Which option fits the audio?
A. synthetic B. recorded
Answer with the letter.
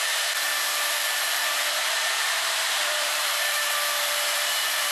A